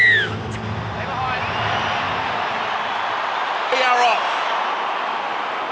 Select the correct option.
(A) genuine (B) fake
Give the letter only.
A